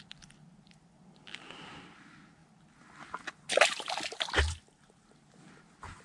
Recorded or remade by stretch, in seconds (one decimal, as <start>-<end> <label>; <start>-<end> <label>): 0.0-6.0 recorded